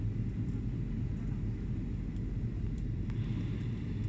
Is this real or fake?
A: real